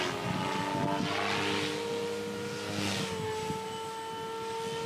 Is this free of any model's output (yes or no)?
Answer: yes